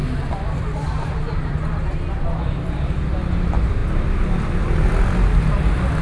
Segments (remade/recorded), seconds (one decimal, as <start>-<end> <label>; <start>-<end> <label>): 0.0-6.0 recorded